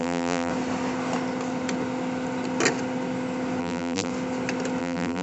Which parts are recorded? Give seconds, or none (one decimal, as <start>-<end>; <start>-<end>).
0.5-3.6; 4.1-4.8